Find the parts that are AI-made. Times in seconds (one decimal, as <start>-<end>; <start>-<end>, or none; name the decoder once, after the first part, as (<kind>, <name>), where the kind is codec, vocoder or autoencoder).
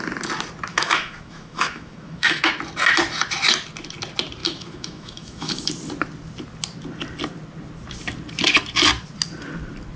0.7-2.5 (autoencoder, DAC-VAE); 4.4-5.7